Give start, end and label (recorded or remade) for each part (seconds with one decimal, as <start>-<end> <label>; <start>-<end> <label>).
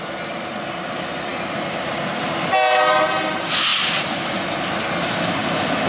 0.0-5.9 recorded